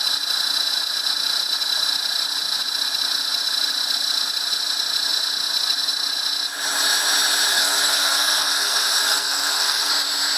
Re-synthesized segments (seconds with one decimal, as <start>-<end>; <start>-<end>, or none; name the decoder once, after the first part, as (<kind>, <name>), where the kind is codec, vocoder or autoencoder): 7.5-9.9 (codec, SNAC)

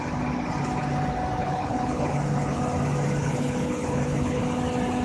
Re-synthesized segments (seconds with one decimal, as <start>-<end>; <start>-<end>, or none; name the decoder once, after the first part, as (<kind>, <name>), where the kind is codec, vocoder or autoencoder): 1.4-2.6 (codec, HILCodec); 3.2-4.4

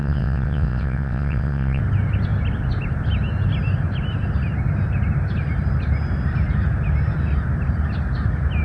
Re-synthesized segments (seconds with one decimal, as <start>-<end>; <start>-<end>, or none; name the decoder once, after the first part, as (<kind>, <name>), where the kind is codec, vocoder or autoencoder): 0.0-1.8 (vocoder, WaveNeXt)

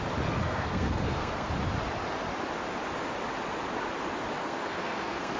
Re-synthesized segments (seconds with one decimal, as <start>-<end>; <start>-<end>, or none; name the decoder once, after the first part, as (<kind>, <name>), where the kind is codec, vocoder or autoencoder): 0.4-1.5 (codec, SNAC); 4.4-5.4

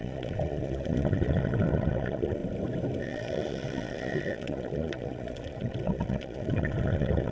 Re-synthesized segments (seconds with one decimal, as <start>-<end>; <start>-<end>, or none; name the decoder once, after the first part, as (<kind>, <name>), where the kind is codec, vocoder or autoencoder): 0.0-2.4 (vocoder, Vocos); 3.0-7.3

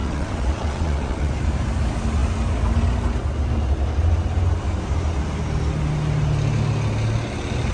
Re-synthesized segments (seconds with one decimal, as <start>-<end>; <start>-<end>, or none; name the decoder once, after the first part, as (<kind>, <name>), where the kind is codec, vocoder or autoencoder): 0.0-1.3 (vocoder, WaveNeXt)

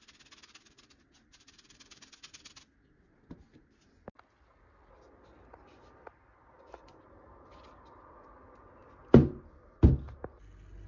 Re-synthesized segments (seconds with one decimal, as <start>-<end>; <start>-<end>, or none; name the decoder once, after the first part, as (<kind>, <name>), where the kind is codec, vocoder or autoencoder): none

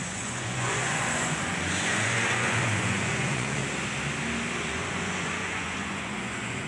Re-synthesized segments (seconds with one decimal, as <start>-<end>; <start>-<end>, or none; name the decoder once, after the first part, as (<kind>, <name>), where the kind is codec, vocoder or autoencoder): 0.0-3.6 (vocoder, Vocos); 4.6-6.7